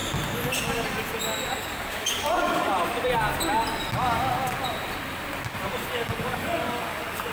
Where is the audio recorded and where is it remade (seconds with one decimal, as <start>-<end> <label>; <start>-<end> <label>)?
0.0-1.5 recorded; 1.5-2.7 remade; 2.7-5.8 recorded; 5.8-7.3 remade